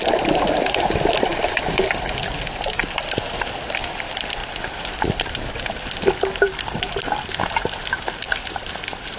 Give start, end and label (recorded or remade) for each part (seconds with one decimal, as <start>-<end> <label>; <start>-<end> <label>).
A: 0.0-9.2 recorded